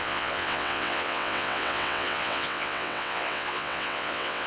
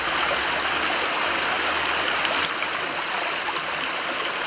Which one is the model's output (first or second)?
first